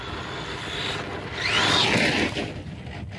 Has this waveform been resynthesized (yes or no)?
no